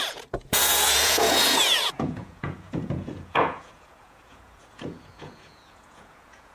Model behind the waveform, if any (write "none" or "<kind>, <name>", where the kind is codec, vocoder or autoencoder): vocoder, Vocos